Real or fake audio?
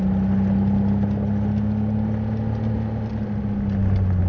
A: real